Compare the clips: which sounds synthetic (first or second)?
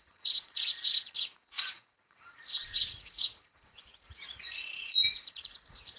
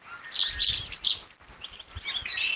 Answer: first